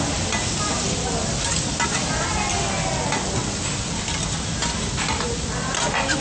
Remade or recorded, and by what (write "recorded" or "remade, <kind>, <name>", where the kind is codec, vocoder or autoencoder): recorded